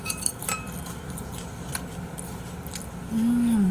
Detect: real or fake real